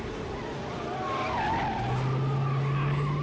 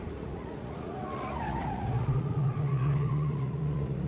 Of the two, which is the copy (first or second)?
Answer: second